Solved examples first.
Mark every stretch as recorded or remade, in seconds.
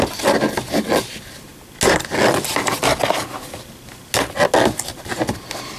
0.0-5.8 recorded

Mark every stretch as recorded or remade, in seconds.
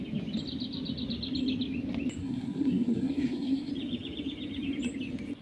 0.0-2.2 recorded; 2.2-3.7 remade; 3.7-5.4 recorded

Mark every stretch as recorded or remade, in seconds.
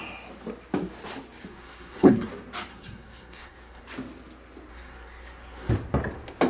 0.0-1.5 recorded; 1.5-2.3 remade; 2.3-2.7 recorded; 2.7-3.8 remade; 3.8-4.7 recorded; 4.7-5.7 remade; 5.7-6.5 recorded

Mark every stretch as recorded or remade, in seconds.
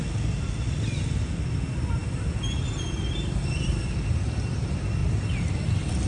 0.0-6.1 recorded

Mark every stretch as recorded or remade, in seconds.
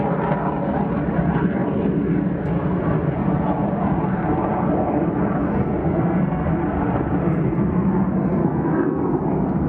0.0-5.8 recorded; 5.8-6.5 remade; 6.5-8.4 recorded; 8.4-9.1 remade; 9.1-9.7 recorded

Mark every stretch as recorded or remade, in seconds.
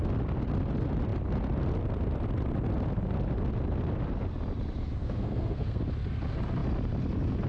0.0-5.0 recorded; 5.0-5.8 remade; 5.8-7.5 recorded